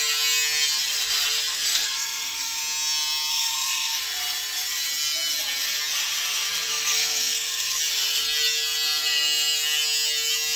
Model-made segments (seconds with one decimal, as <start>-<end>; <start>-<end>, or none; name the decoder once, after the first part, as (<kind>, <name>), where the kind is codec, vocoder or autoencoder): 1.5-2.6 (codec, SNAC); 3.3-4.0; 6.7-7.8